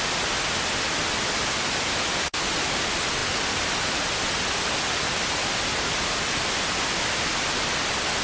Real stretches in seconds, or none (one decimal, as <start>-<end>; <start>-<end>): 0.0-8.2